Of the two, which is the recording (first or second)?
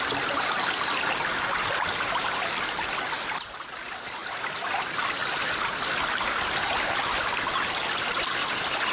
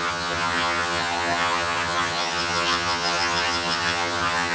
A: first